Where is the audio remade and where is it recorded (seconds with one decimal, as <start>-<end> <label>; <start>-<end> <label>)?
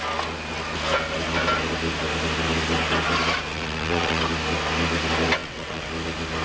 0.0-3.5 recorded; 3.5-4.2 remade; 4.2-5.4 recorded; 5.4-5.9 remade; 5.9-6.4 recorded